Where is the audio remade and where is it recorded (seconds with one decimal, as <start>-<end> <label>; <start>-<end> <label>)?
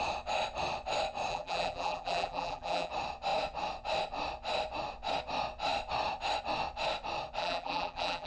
0.0-1.3 recorded; 1.3-2.9 remade; 2.9-7.4 recorded; 7.4-8.3 remade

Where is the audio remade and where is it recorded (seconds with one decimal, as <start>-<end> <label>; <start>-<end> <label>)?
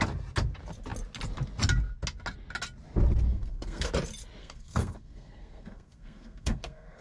0.0-3.3 recorded; 3.3-3.9 remade; 3.9-4.4 recorded; 4.4-7.0 remade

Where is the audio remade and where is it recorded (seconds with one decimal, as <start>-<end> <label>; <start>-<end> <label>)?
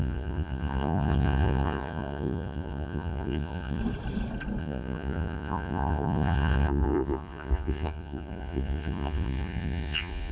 0.0-3.8 remade; 3.8-4.6 recorded; 4.6-10.3 remade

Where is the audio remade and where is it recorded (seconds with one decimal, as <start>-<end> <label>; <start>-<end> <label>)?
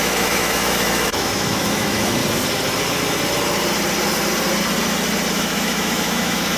0.0-2.2 remade; 2.2-5.3 recorded; 5.3-6.6 remade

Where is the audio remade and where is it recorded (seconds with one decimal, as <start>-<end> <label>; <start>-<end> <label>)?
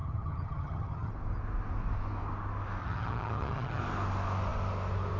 0.0-1.1 remade; 1.1-2.8 recorded; 2.8-3.8 remade; 3.8-5.2 recorded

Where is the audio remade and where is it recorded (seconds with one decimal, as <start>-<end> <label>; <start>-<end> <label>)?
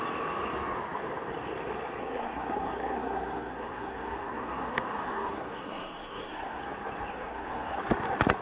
0.0-2.0 recorded; 2.0-6.6 remade; 6.6-7.1 recorded; 7.1-7.8 remade; 7.8-8.4 recorded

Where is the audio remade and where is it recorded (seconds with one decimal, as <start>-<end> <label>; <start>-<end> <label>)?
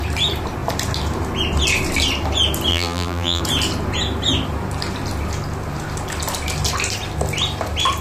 0.0-2.7 recorded; 2.7-3.4 remade; 3.4-8.0 recorded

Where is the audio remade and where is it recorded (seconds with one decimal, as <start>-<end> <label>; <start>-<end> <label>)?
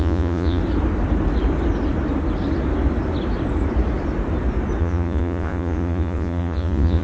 0.0-0.6 remade; 0.6-4.8 recorded; 4.8-7.0 remade